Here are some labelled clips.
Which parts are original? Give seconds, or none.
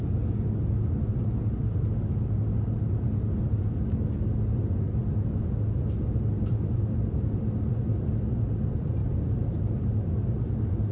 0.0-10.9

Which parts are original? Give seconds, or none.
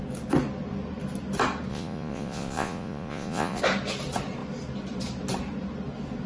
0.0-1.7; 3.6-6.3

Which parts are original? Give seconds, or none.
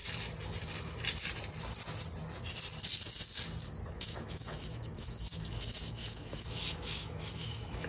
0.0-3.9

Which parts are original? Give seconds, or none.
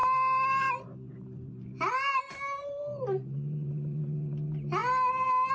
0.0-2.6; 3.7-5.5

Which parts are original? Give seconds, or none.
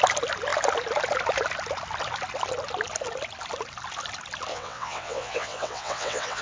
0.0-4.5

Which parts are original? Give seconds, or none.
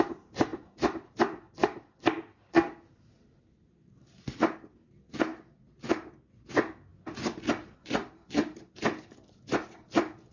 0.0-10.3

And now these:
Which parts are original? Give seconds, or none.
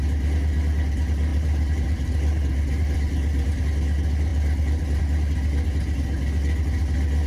0.0-1.3; 3.6-4.3; 5.0-7.3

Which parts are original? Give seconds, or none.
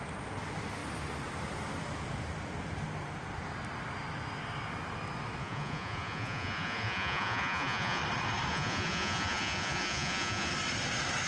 0.0-5.4; 8.0-8.5; 10.5-11.3